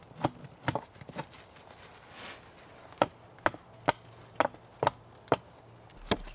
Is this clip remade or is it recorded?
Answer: recorded